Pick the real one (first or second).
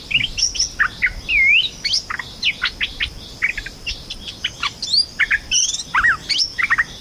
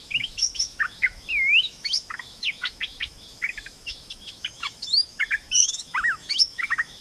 first